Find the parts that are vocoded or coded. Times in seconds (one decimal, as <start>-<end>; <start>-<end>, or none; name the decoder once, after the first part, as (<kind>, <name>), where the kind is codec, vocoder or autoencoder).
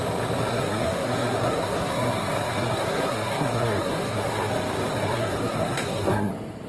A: 0.5-4.5 (codec, SNAC); 5.0-6.3